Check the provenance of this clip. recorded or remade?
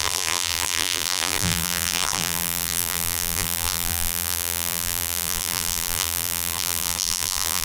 remade